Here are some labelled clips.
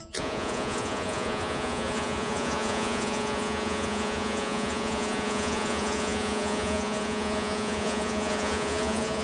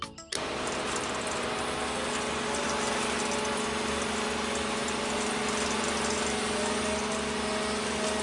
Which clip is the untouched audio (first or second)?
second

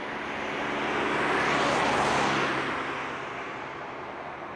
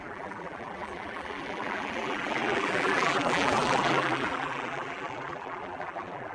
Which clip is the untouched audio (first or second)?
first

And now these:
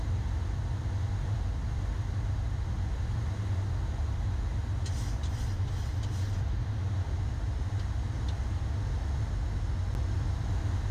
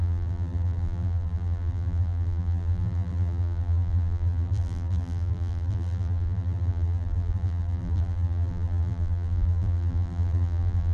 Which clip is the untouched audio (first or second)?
first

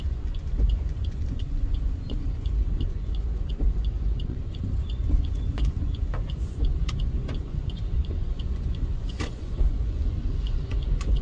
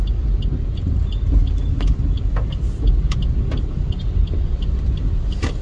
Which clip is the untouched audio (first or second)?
second